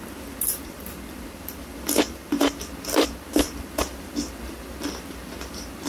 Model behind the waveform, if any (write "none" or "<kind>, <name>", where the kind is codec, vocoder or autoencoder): vocoder, BigVGAN v2